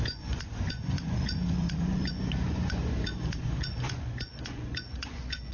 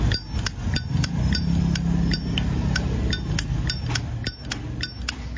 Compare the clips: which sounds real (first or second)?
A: second